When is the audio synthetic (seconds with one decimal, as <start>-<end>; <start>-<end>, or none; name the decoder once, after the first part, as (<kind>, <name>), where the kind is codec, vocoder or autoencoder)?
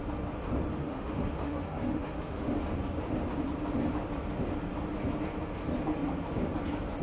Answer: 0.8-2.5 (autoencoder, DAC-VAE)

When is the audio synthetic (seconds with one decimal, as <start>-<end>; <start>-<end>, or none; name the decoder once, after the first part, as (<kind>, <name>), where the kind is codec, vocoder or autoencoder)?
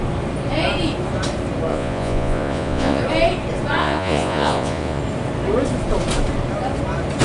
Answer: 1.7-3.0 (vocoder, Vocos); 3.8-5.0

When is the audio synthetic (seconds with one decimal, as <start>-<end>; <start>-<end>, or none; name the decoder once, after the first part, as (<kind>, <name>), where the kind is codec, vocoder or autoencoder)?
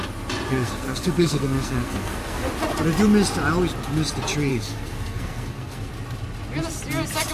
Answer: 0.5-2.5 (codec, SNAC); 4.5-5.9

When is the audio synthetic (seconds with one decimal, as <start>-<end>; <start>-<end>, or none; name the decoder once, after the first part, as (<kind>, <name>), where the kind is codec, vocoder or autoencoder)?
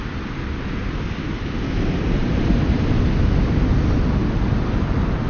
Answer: 2.2-3.0 (vocoder, BigVGAN v2)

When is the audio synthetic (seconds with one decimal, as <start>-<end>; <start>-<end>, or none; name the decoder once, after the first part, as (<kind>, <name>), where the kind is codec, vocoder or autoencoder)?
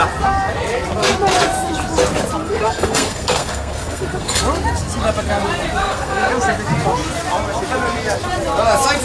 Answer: 2.4-4.4 (codec, SNAC); 5.8-6.3